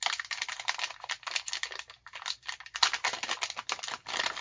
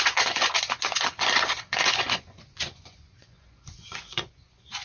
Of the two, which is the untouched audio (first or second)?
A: first